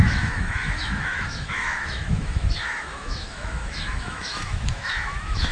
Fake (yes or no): yes